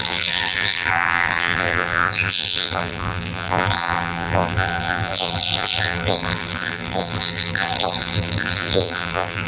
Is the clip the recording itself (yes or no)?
no